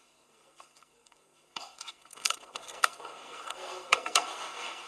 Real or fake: fake